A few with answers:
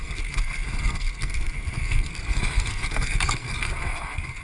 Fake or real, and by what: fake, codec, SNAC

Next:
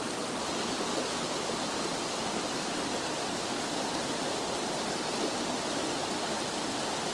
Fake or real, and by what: real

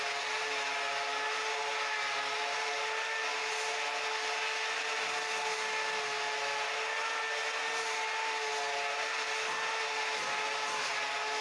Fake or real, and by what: real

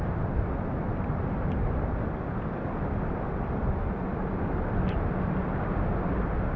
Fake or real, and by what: real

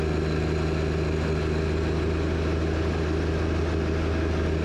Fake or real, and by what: real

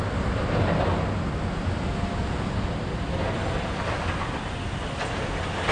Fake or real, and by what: real